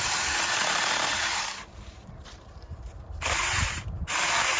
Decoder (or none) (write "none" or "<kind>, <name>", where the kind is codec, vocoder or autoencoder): vocoder, BigVGAN v2